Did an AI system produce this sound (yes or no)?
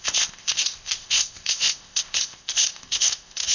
yes